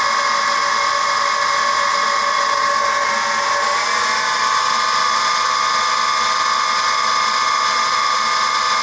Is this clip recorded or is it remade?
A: recorded